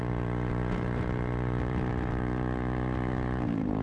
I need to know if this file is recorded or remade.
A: remade